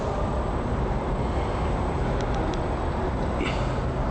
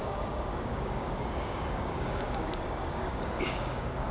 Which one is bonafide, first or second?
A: first